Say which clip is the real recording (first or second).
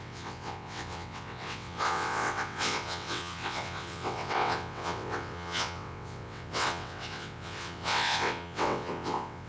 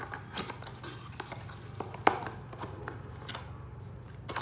second